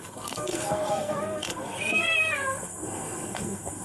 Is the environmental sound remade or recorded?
remade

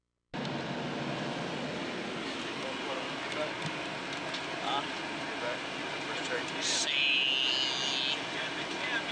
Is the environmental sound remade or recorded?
recorded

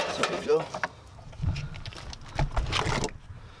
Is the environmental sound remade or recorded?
recorded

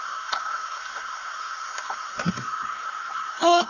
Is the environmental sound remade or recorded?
remade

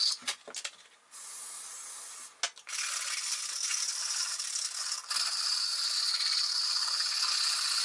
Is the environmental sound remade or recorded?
recorded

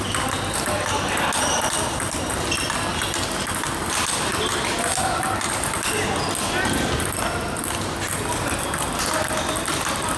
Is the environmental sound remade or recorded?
recorded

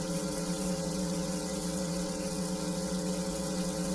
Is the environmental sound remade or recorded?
remade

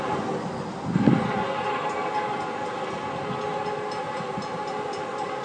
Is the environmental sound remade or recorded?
recorded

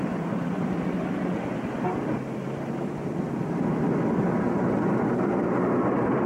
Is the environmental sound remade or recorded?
recorded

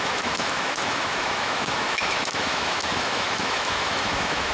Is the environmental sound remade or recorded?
remade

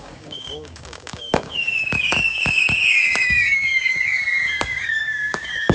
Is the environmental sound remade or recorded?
remade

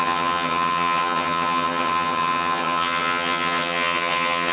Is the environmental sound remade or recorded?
remade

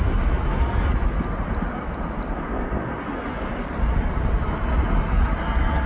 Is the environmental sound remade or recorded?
recorded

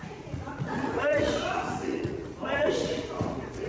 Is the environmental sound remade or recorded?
remade